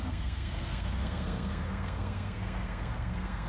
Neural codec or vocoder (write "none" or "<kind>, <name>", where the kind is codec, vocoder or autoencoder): codec, SNAC